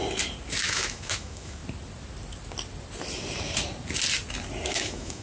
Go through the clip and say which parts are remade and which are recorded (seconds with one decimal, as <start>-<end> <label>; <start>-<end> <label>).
0.0-0.6 recorded; 0.6-1.6 remade; 1.6-4.7 recorded; 4.7-5.2 remade